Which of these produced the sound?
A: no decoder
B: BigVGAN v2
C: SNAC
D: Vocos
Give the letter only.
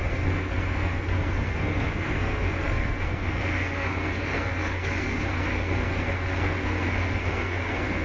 C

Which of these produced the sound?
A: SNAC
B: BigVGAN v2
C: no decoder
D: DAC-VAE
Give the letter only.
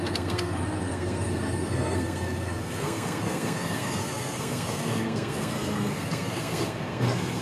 A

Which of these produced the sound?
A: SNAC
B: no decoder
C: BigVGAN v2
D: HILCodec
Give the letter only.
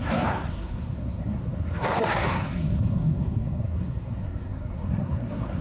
A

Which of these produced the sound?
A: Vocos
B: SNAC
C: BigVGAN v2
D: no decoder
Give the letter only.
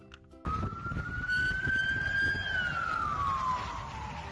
D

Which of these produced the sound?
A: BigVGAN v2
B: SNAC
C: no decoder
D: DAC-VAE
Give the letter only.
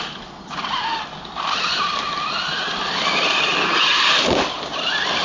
C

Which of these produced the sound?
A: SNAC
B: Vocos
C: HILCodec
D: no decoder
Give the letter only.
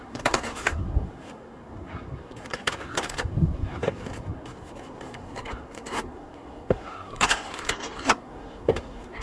A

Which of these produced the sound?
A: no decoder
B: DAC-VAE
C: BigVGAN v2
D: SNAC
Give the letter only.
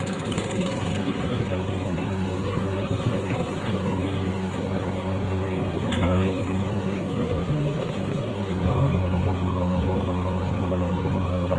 D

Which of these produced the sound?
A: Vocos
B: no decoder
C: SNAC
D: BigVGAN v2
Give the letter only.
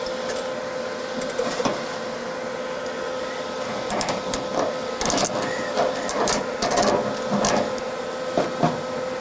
B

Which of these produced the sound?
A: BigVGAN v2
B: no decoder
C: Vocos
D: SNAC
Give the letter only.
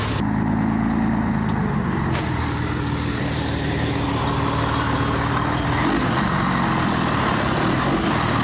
B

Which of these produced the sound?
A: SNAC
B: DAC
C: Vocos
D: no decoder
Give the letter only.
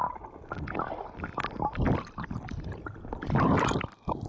D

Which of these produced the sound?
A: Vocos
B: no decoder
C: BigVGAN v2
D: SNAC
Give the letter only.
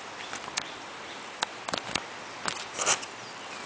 B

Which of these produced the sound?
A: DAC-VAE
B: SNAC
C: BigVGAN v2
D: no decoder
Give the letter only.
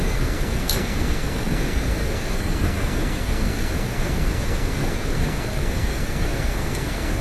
B